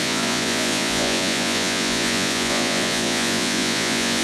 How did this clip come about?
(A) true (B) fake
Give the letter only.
B